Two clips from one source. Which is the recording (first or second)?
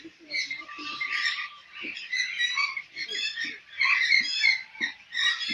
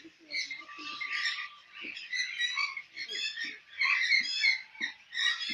second